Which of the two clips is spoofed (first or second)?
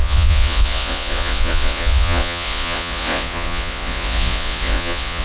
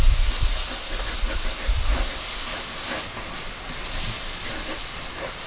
first